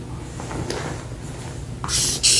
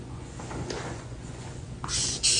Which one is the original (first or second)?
first